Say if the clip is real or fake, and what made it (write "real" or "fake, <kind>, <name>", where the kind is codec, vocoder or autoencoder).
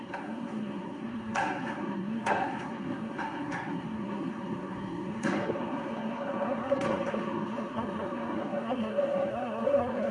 fake, codec, SNAC